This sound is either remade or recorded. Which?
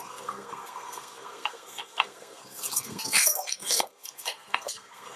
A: remade